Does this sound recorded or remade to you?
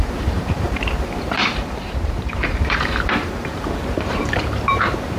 remade